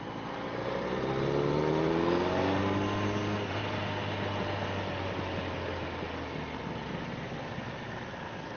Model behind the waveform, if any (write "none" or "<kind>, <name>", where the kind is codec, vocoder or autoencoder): none